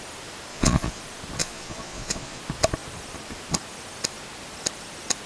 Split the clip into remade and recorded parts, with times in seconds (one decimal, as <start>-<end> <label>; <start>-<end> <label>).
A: 0.0-0.5 recorded; 0.5-1.0 remade; 1.0-1.4 recorded; 1.4-2.4 remade; 2.4-5.3 recorded